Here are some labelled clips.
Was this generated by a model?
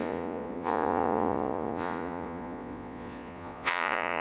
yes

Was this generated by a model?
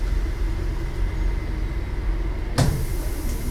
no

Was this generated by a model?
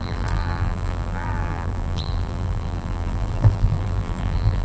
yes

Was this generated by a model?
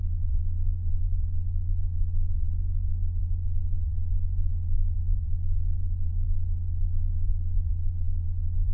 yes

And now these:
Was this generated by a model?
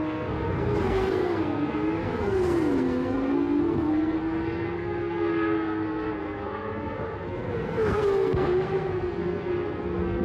yes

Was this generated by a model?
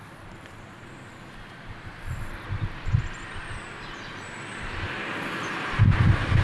no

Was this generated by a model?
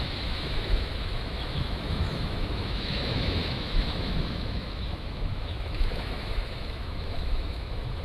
yes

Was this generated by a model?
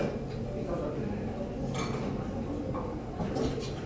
no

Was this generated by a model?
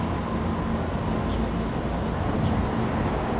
no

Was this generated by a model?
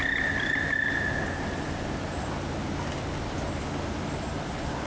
no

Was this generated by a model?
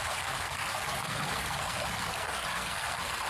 yes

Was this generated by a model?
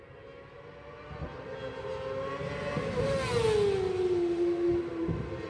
no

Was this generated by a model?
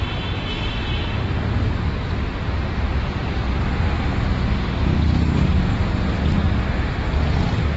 no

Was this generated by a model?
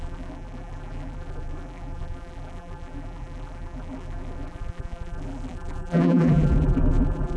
yes